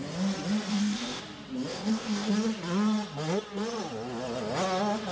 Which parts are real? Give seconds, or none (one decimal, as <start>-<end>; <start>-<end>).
0.0-0.7; 1.2-1.7; 2.3-5.1